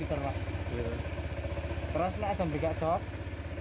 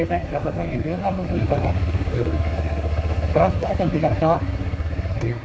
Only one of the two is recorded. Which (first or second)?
first